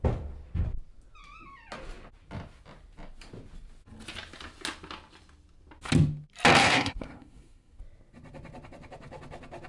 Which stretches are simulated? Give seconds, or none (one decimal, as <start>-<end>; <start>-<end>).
6.6-7.8